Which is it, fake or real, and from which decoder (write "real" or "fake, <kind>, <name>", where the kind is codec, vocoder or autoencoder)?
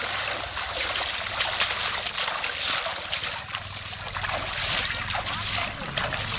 real